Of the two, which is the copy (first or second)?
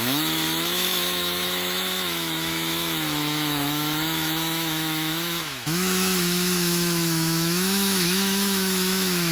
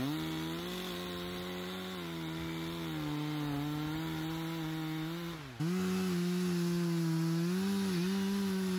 first